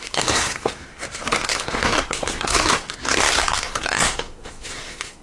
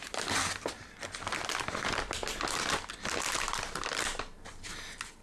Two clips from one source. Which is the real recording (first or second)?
second